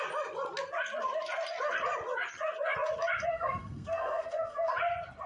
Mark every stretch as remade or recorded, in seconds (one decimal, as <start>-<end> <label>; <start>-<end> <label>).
0.0-3.3 recorded; 3.3-4.7 remade; 4.7-5.3 recorded